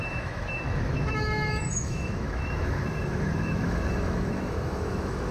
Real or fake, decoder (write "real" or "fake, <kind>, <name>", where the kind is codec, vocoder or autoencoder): fake, autoencoder, DAC-VAE